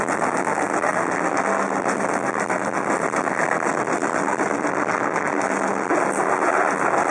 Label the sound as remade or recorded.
recorded